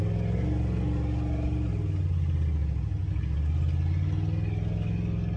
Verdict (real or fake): real